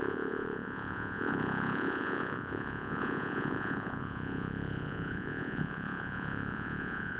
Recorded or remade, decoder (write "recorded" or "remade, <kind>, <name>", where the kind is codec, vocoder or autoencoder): remade, vocoder, Vocos